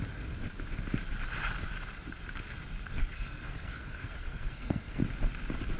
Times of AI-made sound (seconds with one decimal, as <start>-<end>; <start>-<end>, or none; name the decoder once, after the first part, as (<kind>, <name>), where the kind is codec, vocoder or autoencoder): 3.0-5.0 (codec, SNAC)